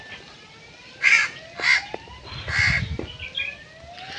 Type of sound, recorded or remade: recorded